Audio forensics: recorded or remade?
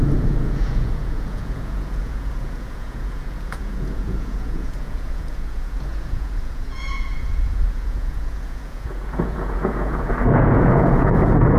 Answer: remade